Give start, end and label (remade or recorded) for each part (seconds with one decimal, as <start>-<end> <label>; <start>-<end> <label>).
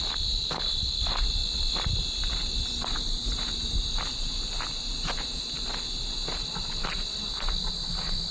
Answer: 0.0-8.3 recorded